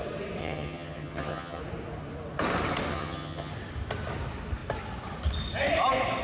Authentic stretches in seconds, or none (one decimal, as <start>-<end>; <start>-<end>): 0.0-0.4; 1.6-2.9; 3.5-6.2